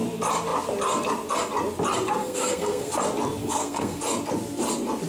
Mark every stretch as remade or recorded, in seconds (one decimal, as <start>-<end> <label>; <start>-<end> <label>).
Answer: 0.0-2.2 recorded; 2.2-2.9 remade; 2.9-3.4 recorded; 3.4-4.0 remade; 4.0-5.1 recorded